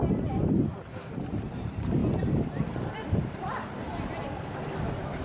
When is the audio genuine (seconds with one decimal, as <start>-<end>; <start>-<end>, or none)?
none